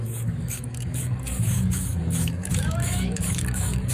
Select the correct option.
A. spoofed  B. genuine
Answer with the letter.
A